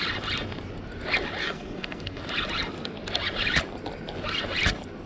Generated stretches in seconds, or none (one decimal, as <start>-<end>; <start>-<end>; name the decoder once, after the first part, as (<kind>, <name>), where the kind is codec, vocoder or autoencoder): 1.4-2.2 (codec, SNAC)